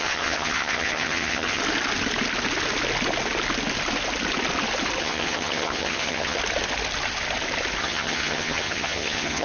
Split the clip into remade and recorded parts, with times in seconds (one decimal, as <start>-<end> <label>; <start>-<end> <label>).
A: 0.0-1.6 remade; 1.6-5.0 recorded; 5.0-6.4 remade; 6.4-7.8 recorded; 7.8-9.4 remade